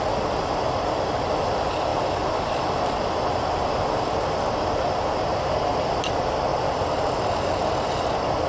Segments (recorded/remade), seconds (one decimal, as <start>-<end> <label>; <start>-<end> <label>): 0.0-1.9 recorded; 1.9-4.9 remade; 4.9-6.5 recorded; 6.5-7.6 remade; 7.6-8.5 recorded